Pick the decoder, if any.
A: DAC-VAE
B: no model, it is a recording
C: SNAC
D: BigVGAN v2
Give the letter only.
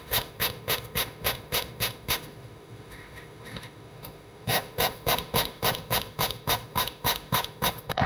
A